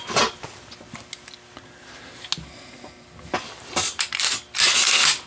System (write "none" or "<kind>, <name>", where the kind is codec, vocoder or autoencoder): none